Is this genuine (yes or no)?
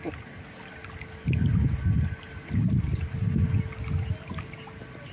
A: yes